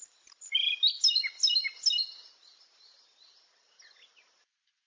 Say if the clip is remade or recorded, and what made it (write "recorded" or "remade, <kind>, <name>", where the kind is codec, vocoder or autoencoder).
recorded